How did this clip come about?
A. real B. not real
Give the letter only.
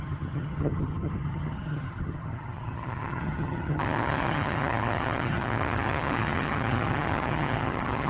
B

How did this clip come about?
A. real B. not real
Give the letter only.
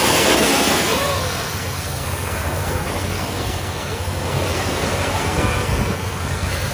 B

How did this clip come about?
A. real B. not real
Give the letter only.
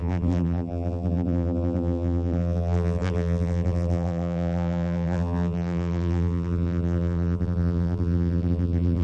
B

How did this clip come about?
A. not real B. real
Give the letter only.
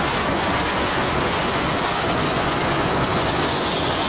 A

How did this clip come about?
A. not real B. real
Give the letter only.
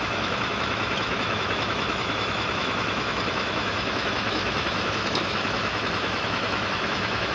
A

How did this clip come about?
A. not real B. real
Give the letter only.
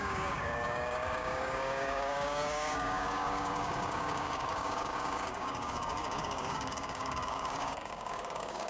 A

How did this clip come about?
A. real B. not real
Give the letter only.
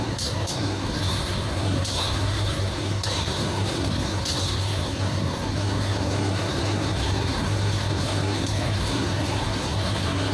B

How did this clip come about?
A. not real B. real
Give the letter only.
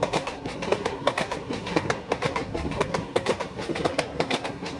A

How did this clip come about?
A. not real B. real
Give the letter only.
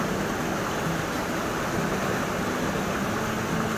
B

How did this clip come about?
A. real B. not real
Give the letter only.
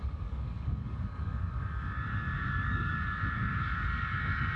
B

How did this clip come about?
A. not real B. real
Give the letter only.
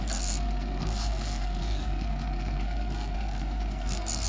A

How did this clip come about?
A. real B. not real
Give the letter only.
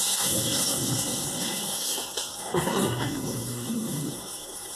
B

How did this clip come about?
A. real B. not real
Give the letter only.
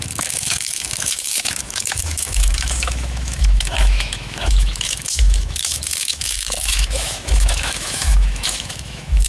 B